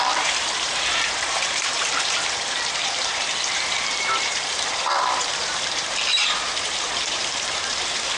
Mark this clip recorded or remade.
remade